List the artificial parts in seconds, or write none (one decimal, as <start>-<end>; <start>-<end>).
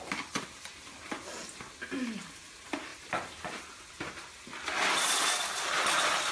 2.9-3.8